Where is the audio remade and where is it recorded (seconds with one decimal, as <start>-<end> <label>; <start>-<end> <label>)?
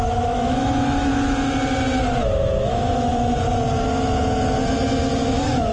0.0-1.1 remade; 1.1-2.6 recorded; 2.6-3.1 remade; 3.1-5.2 recorded; 5.2-5.7 remade